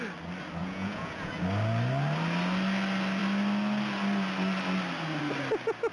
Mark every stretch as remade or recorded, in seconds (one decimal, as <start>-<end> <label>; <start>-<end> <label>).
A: 0.0-0.6 recorded; 0.6-1.4 remade; 1.4-5.9 recorded